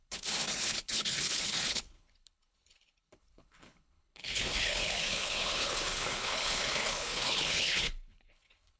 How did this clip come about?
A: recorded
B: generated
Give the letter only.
B